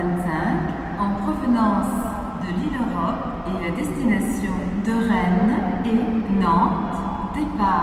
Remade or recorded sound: recorded